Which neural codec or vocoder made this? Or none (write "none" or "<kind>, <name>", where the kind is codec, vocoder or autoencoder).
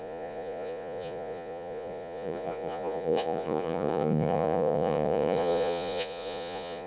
vocoder, Vocos